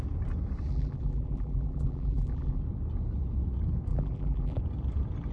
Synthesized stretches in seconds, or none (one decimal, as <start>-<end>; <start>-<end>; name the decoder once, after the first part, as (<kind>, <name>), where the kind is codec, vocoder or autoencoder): 0.7-2.6 (vocoder, BigVGAN v2); 3.9-4.6